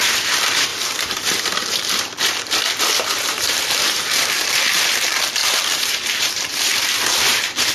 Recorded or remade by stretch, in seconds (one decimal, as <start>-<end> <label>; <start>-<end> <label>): 0.0-7.7 remade